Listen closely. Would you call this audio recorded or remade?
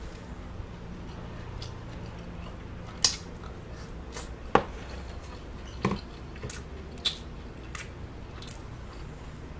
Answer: recorded